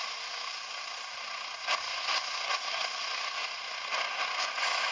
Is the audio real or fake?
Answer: real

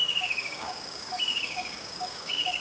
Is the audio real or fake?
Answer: fake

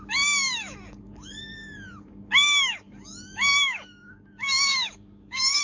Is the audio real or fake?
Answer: fake